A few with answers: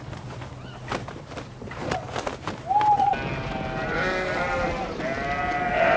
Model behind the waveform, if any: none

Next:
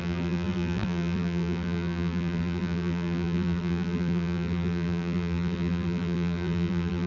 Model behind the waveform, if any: vocoder, BigVGAN v2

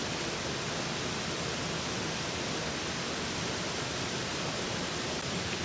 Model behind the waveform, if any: none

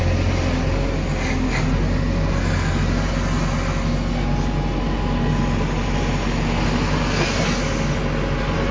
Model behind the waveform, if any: none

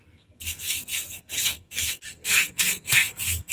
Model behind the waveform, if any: codec, SNAC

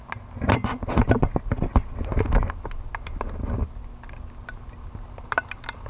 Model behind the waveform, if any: none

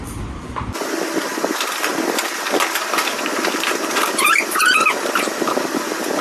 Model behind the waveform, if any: none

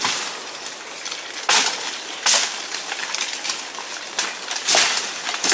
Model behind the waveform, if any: none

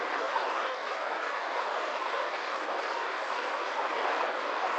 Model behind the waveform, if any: codec, DAC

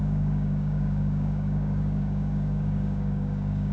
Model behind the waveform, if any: codec, DAC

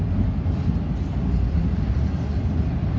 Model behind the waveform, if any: none